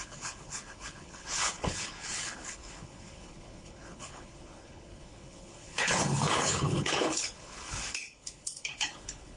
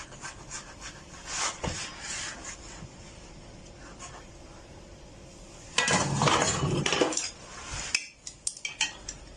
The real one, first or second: second